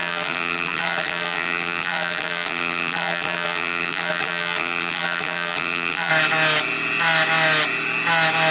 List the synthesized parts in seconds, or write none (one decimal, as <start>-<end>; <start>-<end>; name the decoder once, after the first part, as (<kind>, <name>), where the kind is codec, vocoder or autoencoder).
0.0-6.1 (vocoder, BigVGAN v2)